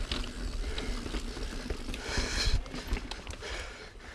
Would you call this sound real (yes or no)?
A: yes